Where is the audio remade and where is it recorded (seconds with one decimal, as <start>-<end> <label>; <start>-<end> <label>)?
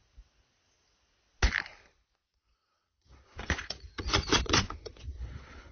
0.0-2.2 recorded; 2.2-5.7 remade